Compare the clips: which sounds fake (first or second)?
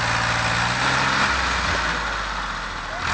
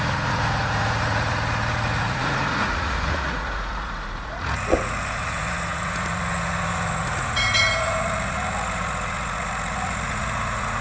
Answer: second